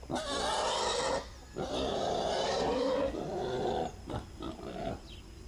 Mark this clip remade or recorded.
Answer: recorded